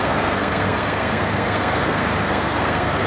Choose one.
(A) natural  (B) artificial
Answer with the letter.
B